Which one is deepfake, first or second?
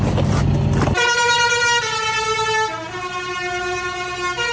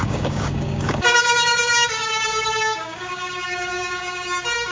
second